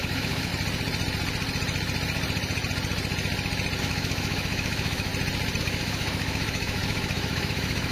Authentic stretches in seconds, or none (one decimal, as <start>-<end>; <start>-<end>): 0.5-3.8; 5.1-5.6